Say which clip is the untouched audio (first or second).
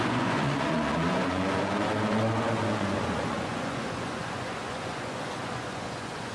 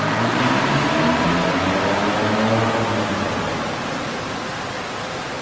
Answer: second